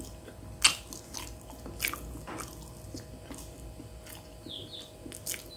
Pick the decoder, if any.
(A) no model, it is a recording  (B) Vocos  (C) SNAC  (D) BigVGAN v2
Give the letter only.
A